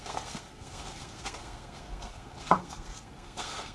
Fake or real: fake